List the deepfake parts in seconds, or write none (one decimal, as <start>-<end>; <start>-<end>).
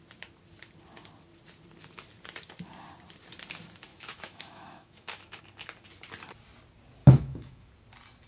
3.9-5.4; 7.0-7.7